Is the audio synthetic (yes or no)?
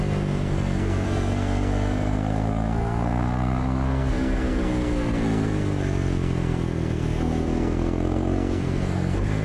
yes